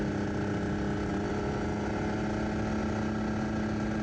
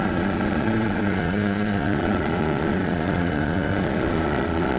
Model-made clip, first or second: second